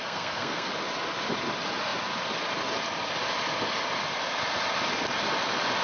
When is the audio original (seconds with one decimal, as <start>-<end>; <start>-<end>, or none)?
0.7-5.8